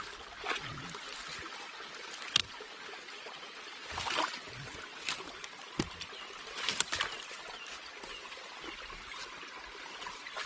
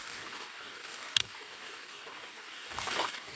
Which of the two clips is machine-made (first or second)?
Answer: second